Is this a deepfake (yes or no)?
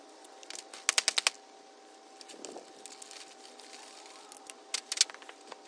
no